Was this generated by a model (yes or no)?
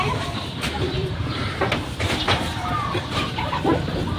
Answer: yes